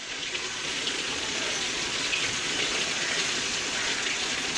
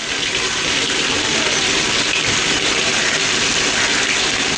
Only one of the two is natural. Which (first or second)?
second